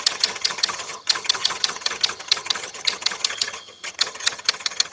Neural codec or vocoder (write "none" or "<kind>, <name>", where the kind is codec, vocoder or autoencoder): vocoder, HiFi-GAN